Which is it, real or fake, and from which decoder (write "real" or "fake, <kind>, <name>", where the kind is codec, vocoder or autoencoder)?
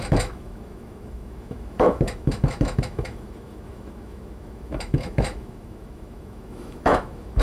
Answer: fake, autoencoder, DAC-VAE